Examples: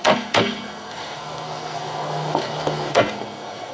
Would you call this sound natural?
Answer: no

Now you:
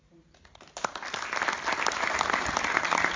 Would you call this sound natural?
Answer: yes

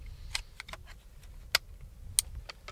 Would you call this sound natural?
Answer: yes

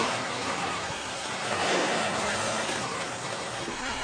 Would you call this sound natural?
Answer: no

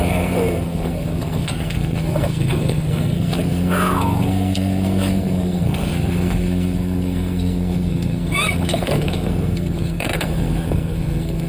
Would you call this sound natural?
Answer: no